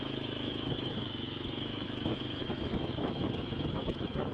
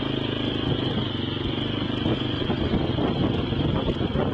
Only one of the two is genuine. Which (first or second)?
second